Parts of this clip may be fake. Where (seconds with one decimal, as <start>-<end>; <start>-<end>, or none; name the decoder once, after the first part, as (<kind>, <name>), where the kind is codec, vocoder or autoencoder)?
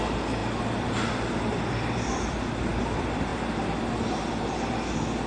1.5-2.4 (vocoder, BigVGAN v2)